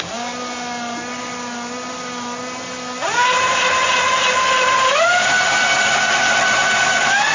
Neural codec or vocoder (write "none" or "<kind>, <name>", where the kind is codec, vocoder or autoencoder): none